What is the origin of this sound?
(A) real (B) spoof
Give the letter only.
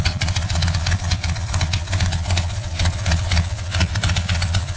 B